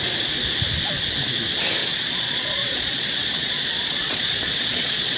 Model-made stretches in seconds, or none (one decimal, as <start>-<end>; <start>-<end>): 1.8-5.2